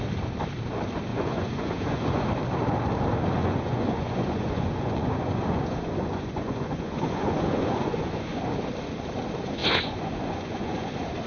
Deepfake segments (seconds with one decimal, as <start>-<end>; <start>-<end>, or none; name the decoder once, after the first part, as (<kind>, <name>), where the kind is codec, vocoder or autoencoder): 1.1-2.3 (vocoder, Vocos); 3.4-8.4; 9.6-10.9